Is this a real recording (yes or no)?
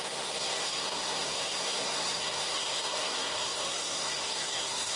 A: no